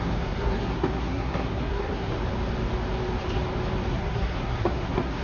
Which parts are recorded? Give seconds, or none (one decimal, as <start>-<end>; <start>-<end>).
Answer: 2.2-3.9